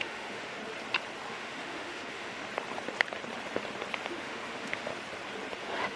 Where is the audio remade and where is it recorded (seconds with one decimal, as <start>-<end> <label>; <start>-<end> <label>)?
0.0-0.6 remade; 0.6-1.3 recorded; 1.3-2.4 remade; 2.4-4.1 recorded; 4.1-4.9 remade; 4.9-5.6 recorded; 5.6-6.0 remade